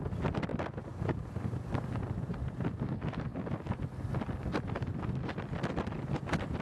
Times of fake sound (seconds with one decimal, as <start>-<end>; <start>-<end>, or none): none